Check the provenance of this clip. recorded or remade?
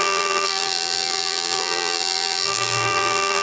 remade